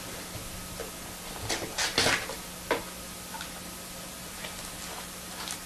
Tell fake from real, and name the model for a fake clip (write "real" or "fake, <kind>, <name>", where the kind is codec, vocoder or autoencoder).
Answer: real